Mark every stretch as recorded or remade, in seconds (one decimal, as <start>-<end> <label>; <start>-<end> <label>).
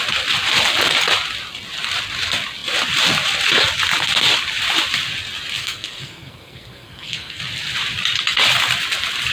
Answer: 0.0-5.6 recorded; 5.6-7.4 remade; 7.4-9.3 recorded